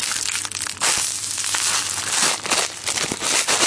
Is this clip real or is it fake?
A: real